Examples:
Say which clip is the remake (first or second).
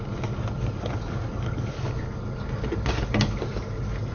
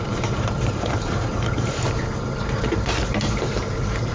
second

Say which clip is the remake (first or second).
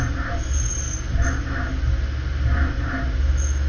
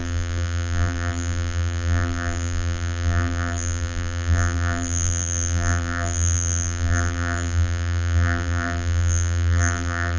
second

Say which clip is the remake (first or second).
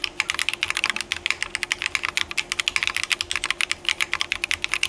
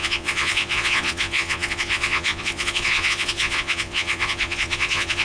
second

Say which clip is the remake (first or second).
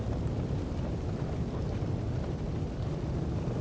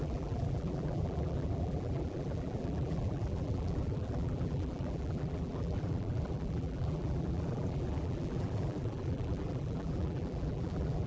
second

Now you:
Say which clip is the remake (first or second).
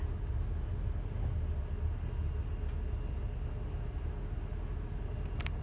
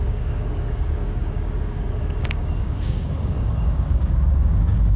second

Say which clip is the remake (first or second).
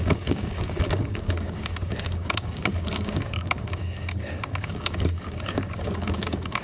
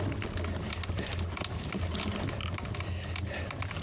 first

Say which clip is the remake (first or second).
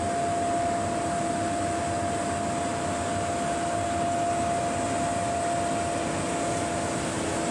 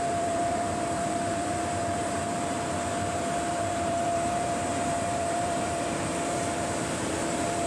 second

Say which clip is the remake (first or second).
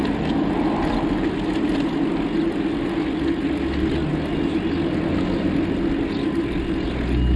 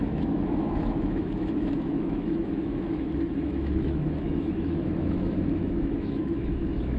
second